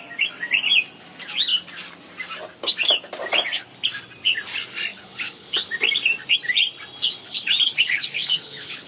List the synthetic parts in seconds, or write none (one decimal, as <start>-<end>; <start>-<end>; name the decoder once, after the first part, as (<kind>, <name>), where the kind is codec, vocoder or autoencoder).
4.9-5.5 (codec, HILCodec); 7.2-8.9